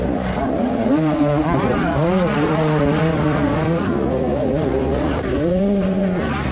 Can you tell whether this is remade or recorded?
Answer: remade